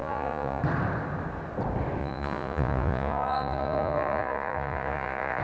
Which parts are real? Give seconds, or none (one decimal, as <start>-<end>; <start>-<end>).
0.6-2.0